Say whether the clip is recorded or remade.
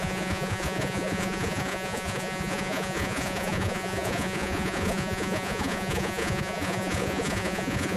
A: remade